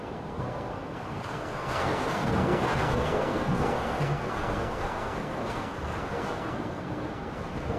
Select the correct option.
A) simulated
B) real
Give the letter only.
A